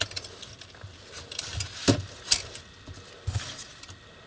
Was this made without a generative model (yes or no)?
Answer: yes